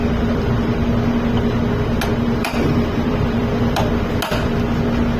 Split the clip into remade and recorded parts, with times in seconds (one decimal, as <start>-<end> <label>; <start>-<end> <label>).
0.0-1.6 remade; 1.6-2.4 recorded; 2.4-3.9 remade; 3.9-5.2 recorded